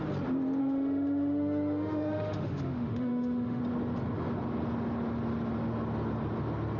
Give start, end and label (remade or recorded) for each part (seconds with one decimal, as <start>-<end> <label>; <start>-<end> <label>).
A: 0.0-0.6 recorded; 0.6-3.6 remade; 3.6-6.8 recorded